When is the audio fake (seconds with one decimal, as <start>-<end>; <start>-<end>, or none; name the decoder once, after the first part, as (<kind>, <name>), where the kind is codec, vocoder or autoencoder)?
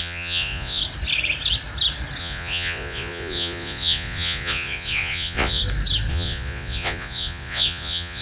0.0-0.8 (vocoder, Vocos); 2.2-5.6; 6.1-8.2